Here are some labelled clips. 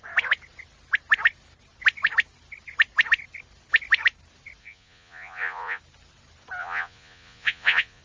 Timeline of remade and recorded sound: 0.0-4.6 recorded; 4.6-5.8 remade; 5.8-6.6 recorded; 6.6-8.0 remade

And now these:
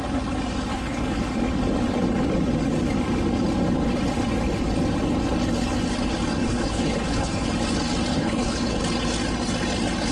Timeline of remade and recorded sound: 0.0-0.7 recorded; 0.7-1.2 remade; 1.2-6.4 recorded; 6.4-7.5 remade; 7.5-8.1 recorded; 8.1-8.8 remade; 8.8-10.1 recorded